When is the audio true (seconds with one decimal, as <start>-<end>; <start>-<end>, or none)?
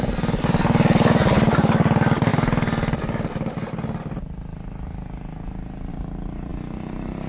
0.0-7.3